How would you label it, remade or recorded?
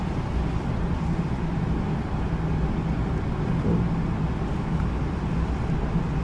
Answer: remade